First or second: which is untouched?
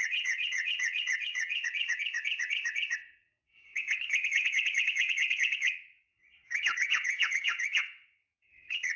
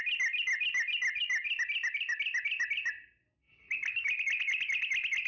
second